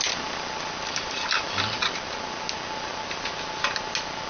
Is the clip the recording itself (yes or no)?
yes